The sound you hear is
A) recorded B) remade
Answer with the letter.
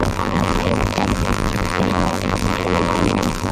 B